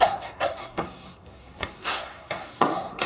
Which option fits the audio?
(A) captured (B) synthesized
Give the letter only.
B